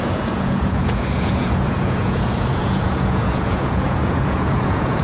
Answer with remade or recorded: remade